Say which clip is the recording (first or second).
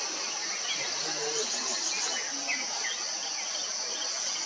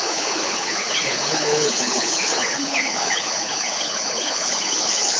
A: first